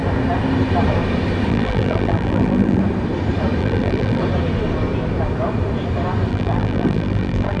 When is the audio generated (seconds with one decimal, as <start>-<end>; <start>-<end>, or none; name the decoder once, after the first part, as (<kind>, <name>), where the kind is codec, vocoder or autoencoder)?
1.5-2.8 (vocoder, BigVGAN v2); 3.6-4.2; 6.3-7.6